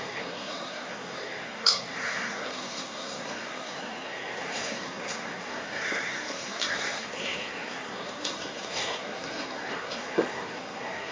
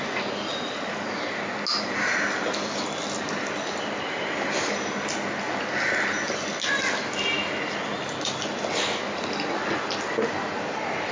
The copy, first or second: first